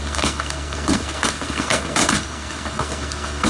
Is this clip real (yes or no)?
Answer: no